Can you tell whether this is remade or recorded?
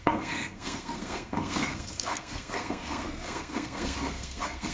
remade